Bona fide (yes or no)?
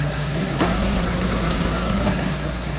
no